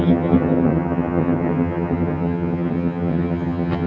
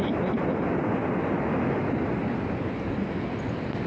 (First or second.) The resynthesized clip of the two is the first